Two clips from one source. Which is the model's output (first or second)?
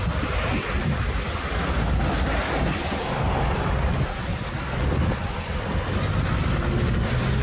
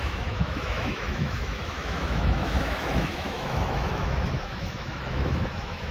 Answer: second